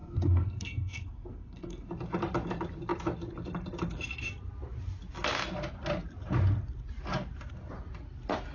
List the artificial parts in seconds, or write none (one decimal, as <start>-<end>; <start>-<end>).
0.0-1.9